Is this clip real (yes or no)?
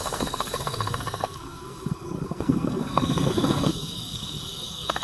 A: no